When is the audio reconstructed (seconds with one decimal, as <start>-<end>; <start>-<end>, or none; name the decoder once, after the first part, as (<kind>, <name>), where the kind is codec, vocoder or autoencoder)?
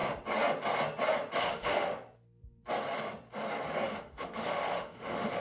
1.4-1.9 (autoencoder, DAC-VAE); 3.9-5.4